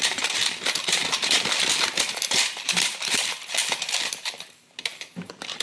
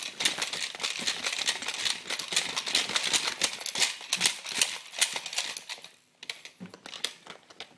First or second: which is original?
second